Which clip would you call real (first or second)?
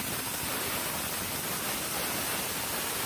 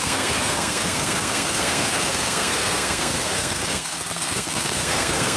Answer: first